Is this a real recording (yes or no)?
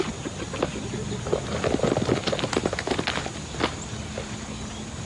yes